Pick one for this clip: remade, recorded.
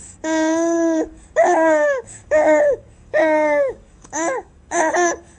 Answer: remade